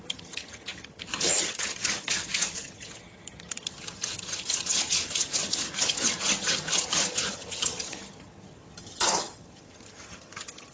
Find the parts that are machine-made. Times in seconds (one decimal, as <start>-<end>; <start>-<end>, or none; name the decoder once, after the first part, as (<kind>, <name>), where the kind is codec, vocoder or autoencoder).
0.0-10.7 (vocoder, HiFi-GAN)